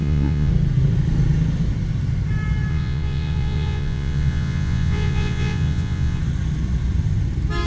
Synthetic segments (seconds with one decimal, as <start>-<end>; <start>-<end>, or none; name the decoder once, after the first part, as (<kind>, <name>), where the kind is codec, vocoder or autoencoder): 0.0-0.5 (vocoder, Vocos); 2.7-6.2